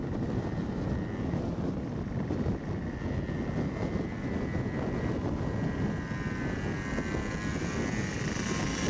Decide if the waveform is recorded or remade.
recorded